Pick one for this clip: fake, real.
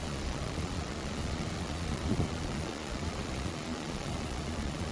fake